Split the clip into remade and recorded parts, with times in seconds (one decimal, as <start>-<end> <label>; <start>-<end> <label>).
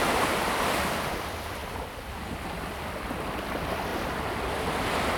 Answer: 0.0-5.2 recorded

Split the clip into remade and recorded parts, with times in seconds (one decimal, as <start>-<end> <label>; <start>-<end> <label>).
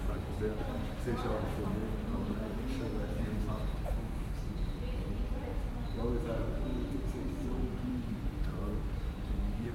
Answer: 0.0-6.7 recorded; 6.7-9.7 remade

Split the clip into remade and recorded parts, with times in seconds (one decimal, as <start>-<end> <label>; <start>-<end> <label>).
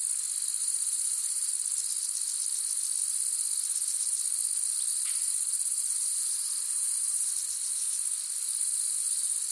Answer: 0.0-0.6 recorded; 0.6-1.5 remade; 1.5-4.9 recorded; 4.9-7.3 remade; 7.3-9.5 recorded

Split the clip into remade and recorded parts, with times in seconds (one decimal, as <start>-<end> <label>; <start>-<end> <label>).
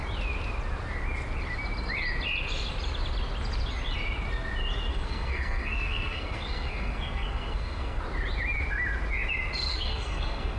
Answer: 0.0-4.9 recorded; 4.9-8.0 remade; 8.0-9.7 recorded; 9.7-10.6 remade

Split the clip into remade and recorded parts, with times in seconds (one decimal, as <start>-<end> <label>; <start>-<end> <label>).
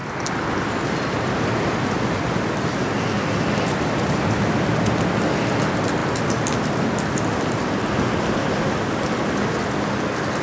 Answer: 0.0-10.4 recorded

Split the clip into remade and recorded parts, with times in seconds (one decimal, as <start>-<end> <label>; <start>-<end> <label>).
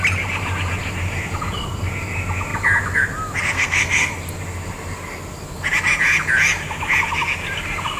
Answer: 0.0-3.4 recorded; 3.4-4.1 remade; 4.1-8.0 recorded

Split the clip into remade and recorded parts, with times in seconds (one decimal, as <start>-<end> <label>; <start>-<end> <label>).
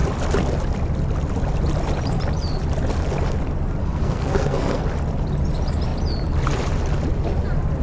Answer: 0.0-3.8 recorded; 3.8-4.8 remade; 4.8-7.8 recorded